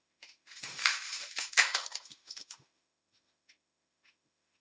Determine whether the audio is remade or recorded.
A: remade